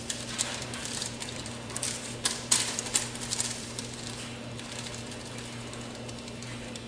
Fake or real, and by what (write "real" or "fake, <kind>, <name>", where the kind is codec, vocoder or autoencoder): fake, vocoder, BigVGAN v2